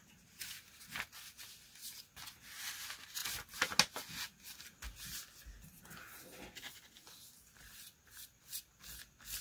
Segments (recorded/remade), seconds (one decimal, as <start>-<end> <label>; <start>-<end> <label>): 0.0-9.4 recorded